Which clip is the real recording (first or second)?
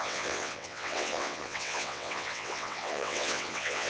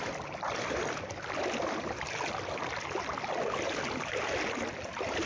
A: second